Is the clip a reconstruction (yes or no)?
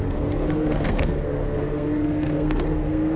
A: yes